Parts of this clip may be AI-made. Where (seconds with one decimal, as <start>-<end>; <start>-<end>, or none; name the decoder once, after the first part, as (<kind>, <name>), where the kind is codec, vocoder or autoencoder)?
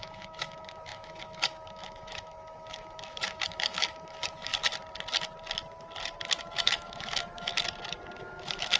0.0-4.5 (autoencoder, DAC-VAE); 6.4-7.5; 8.2-8.8